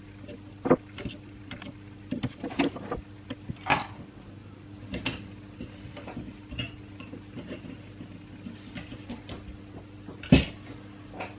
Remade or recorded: recorded